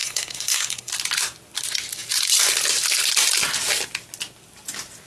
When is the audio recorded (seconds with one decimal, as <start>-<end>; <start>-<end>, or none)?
0.9-5.1